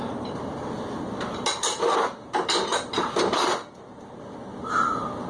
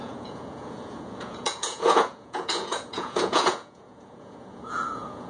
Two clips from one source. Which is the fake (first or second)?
second